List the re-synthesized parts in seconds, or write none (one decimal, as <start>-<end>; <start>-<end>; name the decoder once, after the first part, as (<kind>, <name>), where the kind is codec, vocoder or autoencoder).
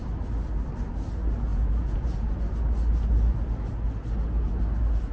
1.5-2.3 (vocoder, Vocos)